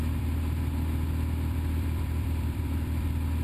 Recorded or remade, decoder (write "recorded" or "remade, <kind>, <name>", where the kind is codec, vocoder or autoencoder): remade, vocoder, BigVGAN v2